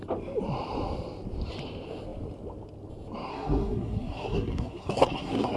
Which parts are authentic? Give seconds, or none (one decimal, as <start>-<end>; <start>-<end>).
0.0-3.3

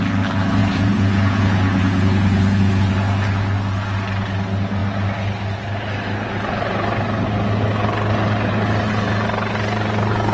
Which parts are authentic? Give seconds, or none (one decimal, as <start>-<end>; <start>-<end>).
0.0-0.6; 2.9-10.3

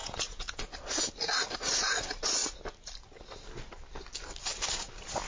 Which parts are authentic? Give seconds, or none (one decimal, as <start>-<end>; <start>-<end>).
0.6-5.3

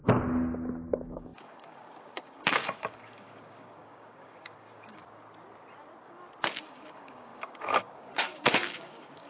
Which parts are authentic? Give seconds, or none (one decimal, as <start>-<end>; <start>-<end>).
0.0-0.9; 5.0-6.6

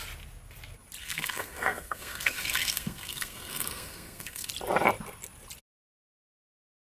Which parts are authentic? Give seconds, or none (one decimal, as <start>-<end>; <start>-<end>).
0.0-1.0; 4.5-7.0

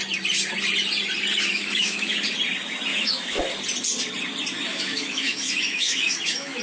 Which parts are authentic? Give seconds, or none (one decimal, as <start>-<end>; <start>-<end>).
0.0-1.5; 2.1-2.9; 3.4-4.7

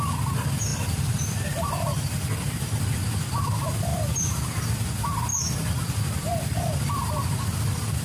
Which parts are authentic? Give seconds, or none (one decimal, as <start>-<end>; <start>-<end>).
0.0-0.7; 1.7-3.9; 4.8-8.0